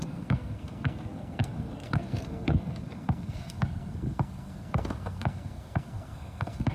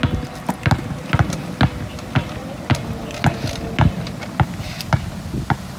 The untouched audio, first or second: second